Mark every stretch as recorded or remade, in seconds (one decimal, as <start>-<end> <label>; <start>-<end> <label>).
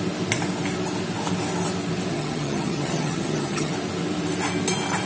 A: 0.0-2.1 recorded; 2.1-3.7 remade; 3.7-5.1 recorded